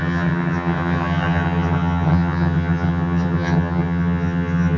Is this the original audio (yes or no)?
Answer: no